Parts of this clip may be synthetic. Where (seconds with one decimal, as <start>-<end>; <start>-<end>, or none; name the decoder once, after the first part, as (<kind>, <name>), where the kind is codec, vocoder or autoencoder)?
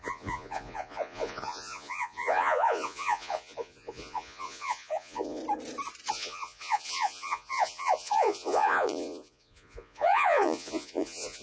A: 0.0-5.4 (vocoder, Vocos); 6.1-11.4